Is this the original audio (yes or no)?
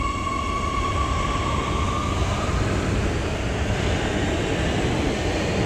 yes